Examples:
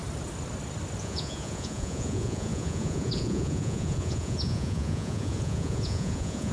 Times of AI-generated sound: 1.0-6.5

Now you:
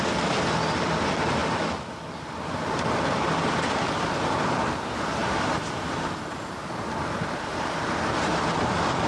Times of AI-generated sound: 5.2-8.3